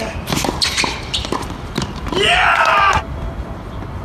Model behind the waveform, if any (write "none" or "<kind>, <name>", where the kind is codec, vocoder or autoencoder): none